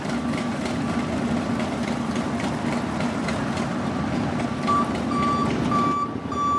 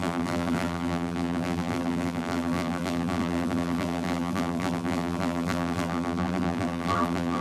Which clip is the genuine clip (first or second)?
first